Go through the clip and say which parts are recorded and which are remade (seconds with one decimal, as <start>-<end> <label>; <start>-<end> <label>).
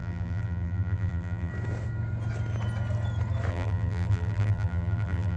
0.0-1.5 remade; 1.5-3.5 recorded; 3.5-5.4 remade